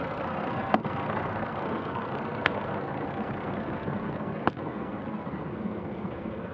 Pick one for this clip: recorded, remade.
remade